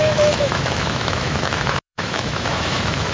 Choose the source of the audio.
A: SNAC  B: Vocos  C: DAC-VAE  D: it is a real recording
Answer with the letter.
C